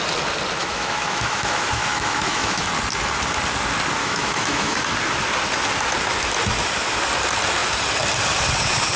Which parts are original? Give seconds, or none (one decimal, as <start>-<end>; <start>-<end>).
0.0-0.6; 2.7-4.0; 4.8-9.0